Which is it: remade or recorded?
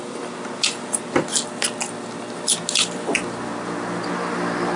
recorded